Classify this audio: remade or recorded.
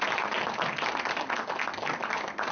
recorded